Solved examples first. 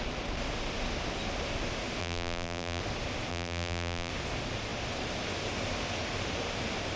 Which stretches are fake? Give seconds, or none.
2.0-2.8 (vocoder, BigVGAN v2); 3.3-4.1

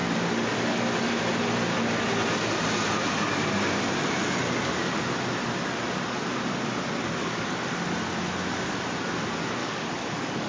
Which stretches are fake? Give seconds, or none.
7.2-7.7 (codec, DAC); 9.6-10.5